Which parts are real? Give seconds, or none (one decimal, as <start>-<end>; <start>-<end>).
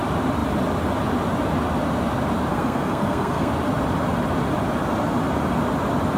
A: 0.0-2.5; 3.5-6.2